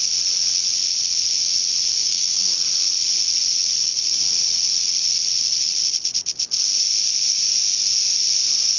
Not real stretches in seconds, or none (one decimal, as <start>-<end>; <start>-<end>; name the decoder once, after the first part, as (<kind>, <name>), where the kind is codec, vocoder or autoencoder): 2.0-2.5 (codec, SNAC)